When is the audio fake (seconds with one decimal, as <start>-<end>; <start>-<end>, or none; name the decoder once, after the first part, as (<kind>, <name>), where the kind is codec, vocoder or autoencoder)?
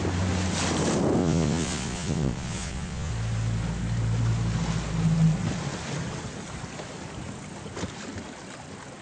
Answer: 1.2-3.1 (vocoder, Vocos)